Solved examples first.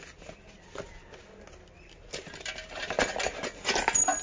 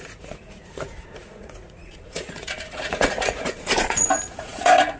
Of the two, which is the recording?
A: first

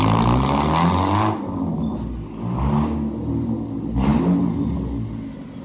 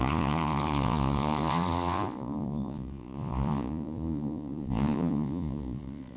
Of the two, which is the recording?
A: first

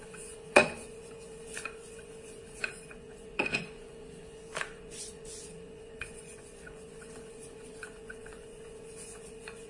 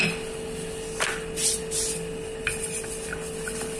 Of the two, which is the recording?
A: second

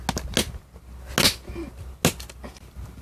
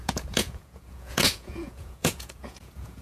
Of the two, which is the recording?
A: first